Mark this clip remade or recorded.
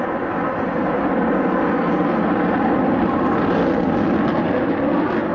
recorded